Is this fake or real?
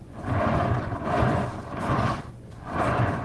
fake